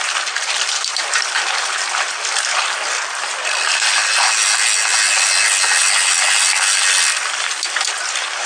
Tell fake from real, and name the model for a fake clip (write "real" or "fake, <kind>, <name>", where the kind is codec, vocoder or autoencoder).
real